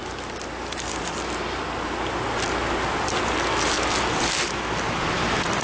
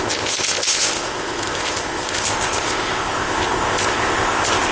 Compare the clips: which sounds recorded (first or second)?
first